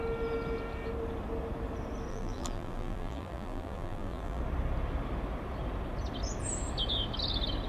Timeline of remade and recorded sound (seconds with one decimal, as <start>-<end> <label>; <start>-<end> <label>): 0.0-2.1 recorded; 2.1-4.4 remade; 4.4-7.7 recorded